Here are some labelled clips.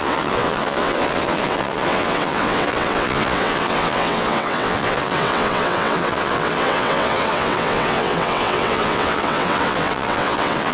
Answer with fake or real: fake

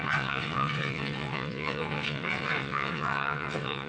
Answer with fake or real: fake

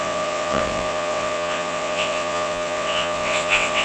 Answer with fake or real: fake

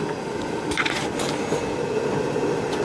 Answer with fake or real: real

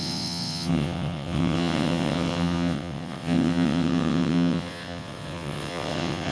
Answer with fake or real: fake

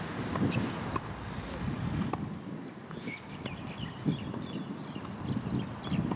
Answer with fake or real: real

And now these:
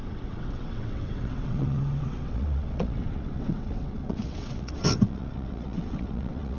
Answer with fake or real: fake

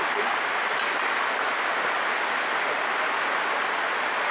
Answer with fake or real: real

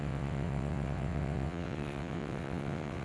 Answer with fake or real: fake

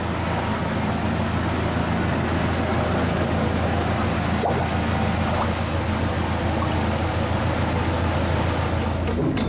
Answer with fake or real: real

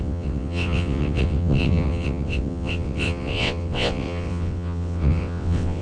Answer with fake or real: fake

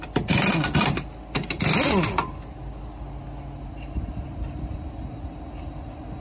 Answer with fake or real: real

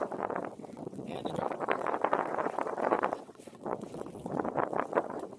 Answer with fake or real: fake